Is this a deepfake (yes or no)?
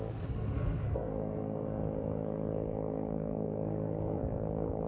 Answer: yes